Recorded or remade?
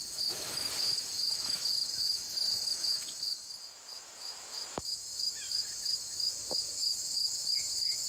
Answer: remade